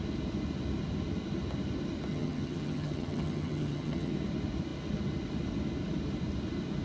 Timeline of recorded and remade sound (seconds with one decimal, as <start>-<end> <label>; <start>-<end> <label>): 0.0-2.1 recorded; 2.1-4.1 remade; 4.1-6.8 recorded